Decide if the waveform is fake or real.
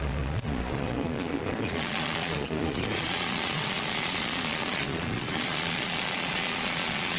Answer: fake